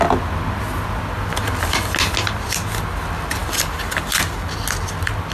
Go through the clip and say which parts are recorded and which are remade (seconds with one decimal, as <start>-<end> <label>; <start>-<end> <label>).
0.0-5.3 recorded